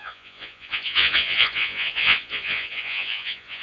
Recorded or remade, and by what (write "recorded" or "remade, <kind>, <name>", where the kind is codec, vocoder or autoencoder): remade, vocoder, Vocos